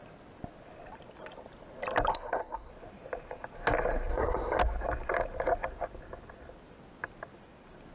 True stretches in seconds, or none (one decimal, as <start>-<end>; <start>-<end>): 0.0-2.1; 2.7-4.1; 4.6-7.9